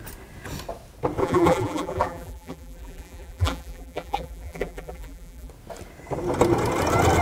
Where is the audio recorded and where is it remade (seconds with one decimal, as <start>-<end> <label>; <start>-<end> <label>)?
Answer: 0.0-1.2 recorded; 1.2-5.5 remade; 5.5-7.2 recorded